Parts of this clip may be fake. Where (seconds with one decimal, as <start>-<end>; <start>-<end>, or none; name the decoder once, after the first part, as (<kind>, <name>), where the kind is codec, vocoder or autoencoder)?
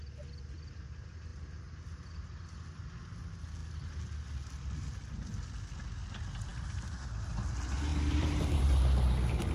6.5-7.3 (vocoder, BigVGAN v2); 7.9-8.6